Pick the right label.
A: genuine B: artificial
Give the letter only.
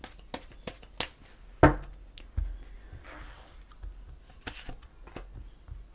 A